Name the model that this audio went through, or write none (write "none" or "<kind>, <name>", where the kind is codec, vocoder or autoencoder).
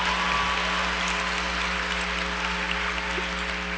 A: none